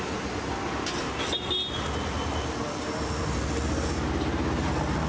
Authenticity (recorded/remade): recorded